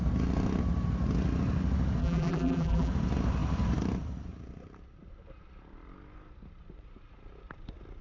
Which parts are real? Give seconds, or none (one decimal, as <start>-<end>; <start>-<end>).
0.0-2.0; 2.9-8.0